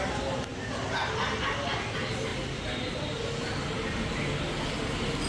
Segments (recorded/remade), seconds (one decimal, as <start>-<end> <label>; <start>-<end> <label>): 0.0-5.3 recorded